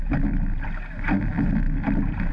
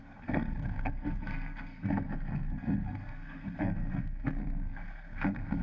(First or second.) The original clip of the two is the first